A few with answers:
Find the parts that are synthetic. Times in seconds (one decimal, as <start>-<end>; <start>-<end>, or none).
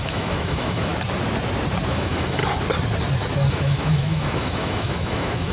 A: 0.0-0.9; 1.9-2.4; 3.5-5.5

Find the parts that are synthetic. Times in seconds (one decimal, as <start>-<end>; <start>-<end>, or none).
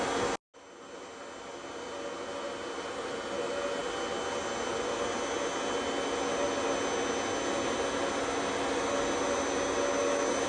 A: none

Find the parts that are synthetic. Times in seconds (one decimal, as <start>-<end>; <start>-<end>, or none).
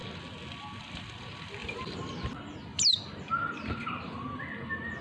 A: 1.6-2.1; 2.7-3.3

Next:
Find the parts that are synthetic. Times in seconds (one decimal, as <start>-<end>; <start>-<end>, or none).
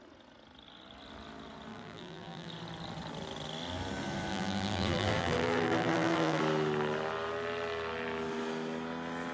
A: 1.7-2.5; 4.3-6.4